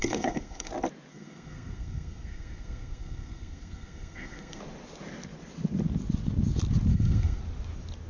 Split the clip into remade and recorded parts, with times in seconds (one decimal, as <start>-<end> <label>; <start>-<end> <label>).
0.0-0.7 remade; 0.7-1.1 recorded; 1.1-4.6 remade; 4.6-6.9 recorded; 6.9-7.4 remade; 7.4-8.1 recorded